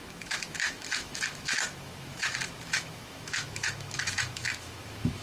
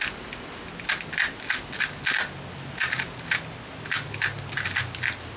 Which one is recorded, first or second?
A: second